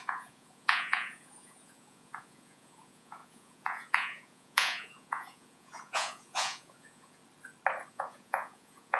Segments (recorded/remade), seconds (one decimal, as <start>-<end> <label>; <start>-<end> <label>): 0.0-7.2 remade; 7.2-7.9 recorded; 7.9-9.0 remade